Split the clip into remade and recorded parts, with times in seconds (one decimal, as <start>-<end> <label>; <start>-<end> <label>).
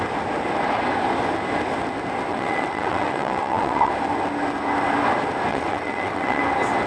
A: 0.0-2.3 recorded; 2.3-3.9 remade; 3.9-5.5 recorded; 5.5-6.4 remade; 6.4-6.9 recorded